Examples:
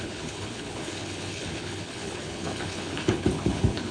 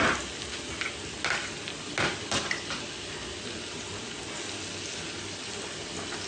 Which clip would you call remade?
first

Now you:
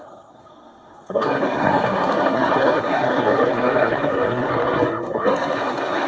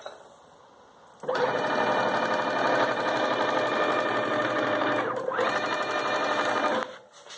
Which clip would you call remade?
first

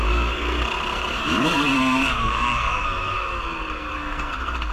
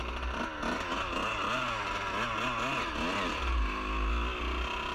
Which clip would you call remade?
first